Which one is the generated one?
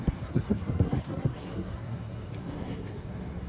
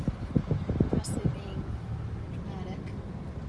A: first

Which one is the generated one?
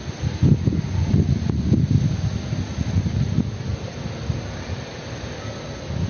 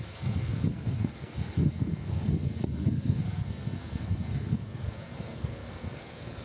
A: second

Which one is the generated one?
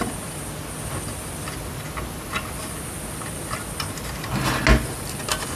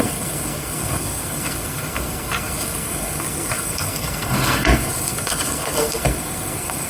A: second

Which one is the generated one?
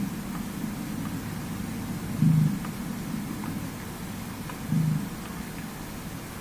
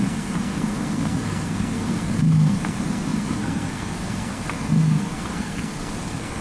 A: second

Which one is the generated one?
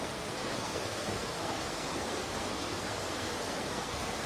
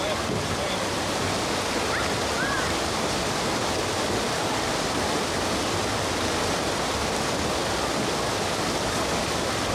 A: first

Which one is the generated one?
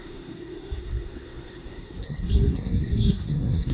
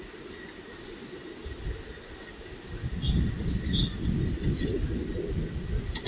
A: first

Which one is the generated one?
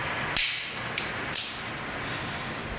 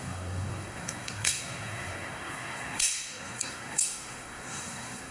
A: second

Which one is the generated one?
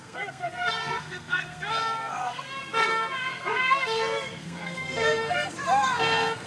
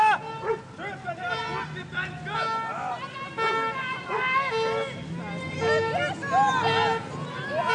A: first